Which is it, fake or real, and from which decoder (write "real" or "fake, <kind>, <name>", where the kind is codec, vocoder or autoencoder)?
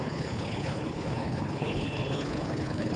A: fake, codec, HILCodec